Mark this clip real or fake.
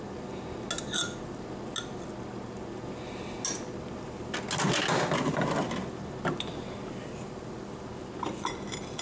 real